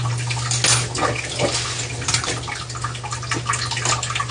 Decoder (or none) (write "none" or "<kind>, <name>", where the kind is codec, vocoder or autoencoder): none